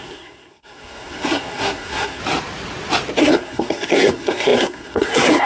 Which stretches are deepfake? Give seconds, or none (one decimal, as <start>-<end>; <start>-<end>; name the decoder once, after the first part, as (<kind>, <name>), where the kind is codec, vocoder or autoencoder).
0.0-2.2 (codec, SNAC); 3.2-5.5